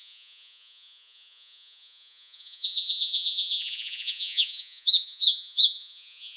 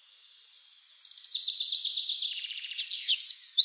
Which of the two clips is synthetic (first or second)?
first